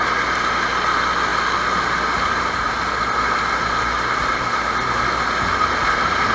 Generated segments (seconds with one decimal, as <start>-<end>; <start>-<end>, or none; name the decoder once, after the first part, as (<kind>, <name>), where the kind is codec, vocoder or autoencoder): none